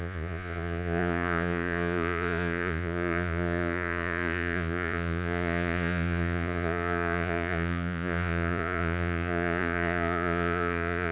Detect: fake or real fake